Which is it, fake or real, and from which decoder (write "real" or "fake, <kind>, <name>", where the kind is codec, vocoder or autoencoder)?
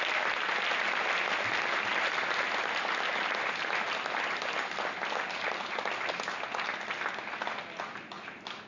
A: real